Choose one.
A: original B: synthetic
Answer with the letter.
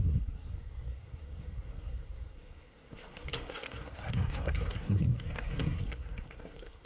B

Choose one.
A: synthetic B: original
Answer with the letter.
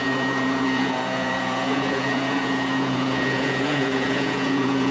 A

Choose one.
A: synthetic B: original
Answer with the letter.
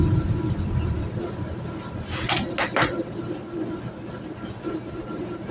B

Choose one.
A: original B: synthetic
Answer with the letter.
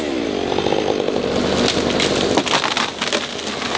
A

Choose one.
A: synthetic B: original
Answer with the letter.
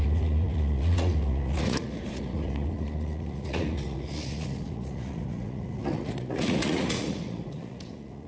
A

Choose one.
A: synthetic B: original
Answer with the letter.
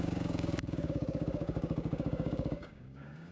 A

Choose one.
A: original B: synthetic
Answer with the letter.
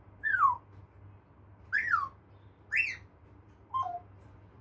A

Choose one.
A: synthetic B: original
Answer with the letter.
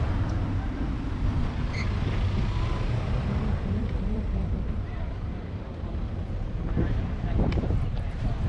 A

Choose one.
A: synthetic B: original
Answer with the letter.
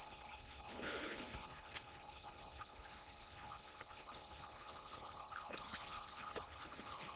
A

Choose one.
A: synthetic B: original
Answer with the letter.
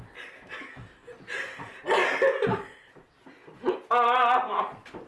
B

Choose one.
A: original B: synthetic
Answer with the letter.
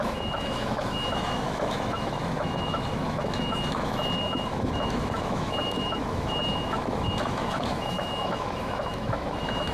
B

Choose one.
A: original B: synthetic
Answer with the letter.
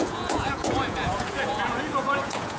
B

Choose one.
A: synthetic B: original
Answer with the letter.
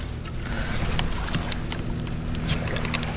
B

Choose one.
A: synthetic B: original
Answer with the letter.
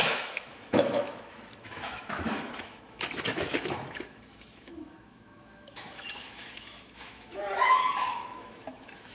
A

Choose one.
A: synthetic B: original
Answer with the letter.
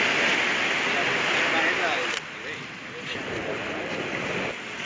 B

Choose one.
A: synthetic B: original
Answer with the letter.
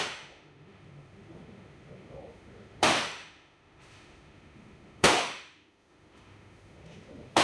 A